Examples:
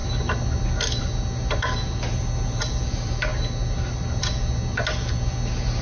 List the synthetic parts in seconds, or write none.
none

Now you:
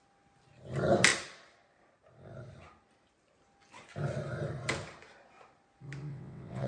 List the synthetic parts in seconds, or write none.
6.1-6.7 (vocoder, WaveNeXt)

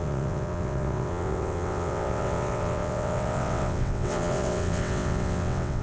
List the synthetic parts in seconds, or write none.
0.0-5.8 (vocoder, WaveNeXt)

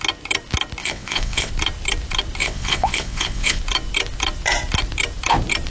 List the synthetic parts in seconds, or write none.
0.8-1.5 (vocoder, WaveNeXt); 2.4-3.6